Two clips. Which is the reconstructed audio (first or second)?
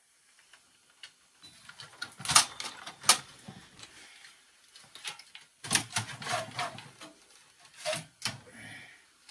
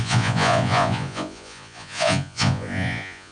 second